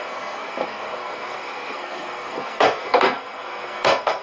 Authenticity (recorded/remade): remade